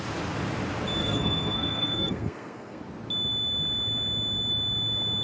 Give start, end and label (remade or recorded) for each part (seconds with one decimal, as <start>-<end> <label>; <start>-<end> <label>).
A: 0.0-1.0 recorded; 1.0-2.8 remade; 2.8-5.2 recorded

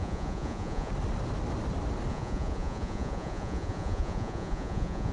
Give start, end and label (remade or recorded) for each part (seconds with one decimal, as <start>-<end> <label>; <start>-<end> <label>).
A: 0.0-0.9 remade; 0.9-2.1 recorded; 2.1-5.1 remade

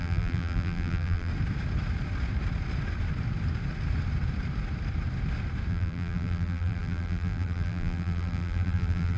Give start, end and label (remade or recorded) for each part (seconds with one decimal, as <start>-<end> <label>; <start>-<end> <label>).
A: 0.0-1.3 remade; 1.3-5.7 recorded; 5.7-9.2 remade

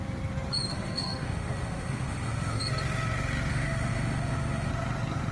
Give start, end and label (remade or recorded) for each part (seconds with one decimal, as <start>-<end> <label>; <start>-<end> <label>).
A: 0.0-0.7 recorded; 0.7-2.6 remade; 2.6-3.5 recorded; 3.5-4.7 remade; 4.7-5.3 recorded

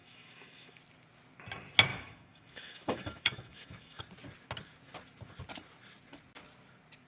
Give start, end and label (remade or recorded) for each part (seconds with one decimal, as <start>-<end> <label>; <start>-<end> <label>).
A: 0.0-0.8 remade; 0.8-1.9 recorded; 1.9-4.0 remade; 4.0-7.1 recorded